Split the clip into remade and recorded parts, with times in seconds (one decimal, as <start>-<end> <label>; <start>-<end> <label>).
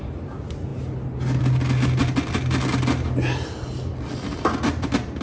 0.0-5.2 recorded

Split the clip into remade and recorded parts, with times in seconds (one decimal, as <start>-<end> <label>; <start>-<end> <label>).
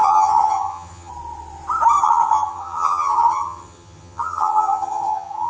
0.0-1.1 remade; 1.1-2.0 recorded; 2.0-5.5 remade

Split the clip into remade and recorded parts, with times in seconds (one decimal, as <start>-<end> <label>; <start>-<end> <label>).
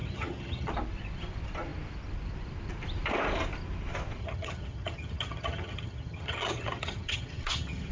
0.0-0.7 remade; 0.7-4.2 recorded; 4.2-7.9 remade